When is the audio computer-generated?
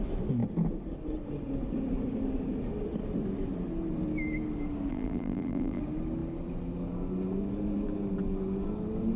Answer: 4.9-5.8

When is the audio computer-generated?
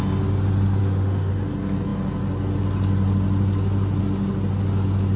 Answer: 0.8-1.3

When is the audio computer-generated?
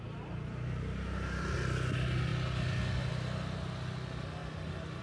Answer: none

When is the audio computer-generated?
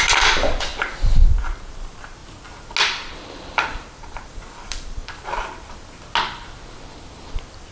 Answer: 0.0-0.7; 1.7-2.2; 2.8-5.0; 7.3-7.7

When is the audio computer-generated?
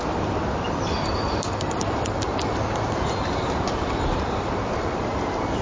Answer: 1.2-4.6